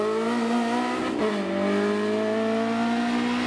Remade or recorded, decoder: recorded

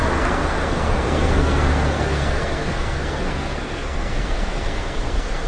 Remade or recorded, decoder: remade, codec, SNAC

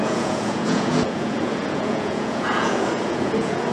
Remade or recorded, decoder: remade, vocoder, Vocos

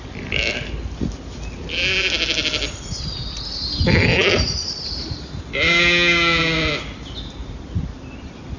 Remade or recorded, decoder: recorded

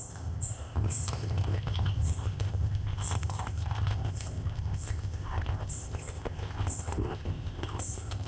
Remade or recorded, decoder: remade, codec, ZipCodec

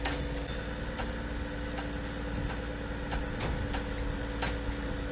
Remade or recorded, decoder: recorded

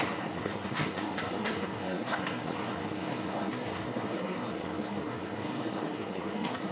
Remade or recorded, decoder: remade, codec, SNAC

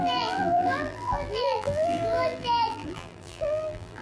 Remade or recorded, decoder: remade, vocoder, BigVGAN v2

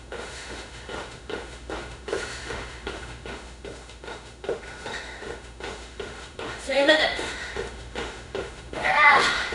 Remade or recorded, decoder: remade, autoencoder, DAC-VAE